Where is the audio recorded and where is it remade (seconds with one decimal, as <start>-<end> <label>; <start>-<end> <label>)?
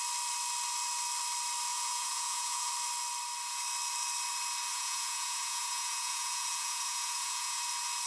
0.0-1.7 recorded; 1.7-2.7 remade; 2.7-4.7 recorded; 4.7-7.6 remade; 7.6-8.1 recorded